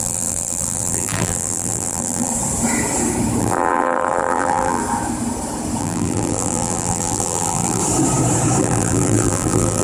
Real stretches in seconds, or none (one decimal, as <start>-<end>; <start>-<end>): 2.3-3.4; 4.8-5.8; 7.8-8.6